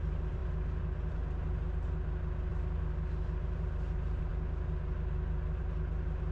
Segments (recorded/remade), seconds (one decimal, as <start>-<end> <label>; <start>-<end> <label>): 0.0-6.3 recorded